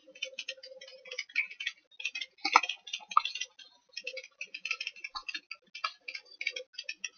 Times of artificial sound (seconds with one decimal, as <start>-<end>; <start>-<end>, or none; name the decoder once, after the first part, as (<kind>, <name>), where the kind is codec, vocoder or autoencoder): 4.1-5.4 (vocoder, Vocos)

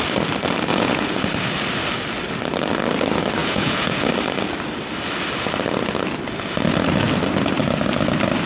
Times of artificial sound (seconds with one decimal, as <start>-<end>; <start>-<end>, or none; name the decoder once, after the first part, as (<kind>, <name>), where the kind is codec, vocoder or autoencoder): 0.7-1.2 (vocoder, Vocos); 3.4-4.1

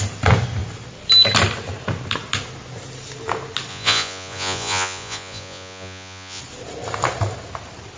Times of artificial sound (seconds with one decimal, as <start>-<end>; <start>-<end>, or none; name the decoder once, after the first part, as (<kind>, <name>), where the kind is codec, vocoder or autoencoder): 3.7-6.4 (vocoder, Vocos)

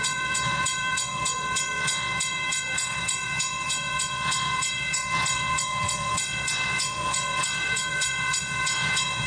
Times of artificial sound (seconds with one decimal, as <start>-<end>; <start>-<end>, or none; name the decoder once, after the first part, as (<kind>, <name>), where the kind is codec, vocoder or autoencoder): 0.0-9.3 (vocoder, Vocos)

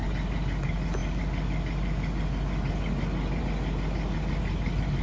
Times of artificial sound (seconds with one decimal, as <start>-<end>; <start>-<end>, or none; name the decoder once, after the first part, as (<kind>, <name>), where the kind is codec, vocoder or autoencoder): none

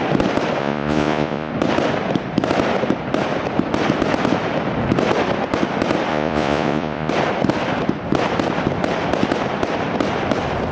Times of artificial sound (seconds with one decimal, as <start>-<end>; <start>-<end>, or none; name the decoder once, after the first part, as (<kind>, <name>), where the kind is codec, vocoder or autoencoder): 0.6-1.5 (vocoder, Vocos); 6.1-7.1

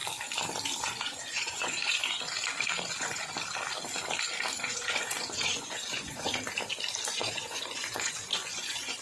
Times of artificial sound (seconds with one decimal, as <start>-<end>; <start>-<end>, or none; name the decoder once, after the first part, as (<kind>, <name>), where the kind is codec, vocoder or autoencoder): 0.9-2.0 (vocoder, Vocos); 2.9-3.3; 4.6-6.3; 7.1-9.0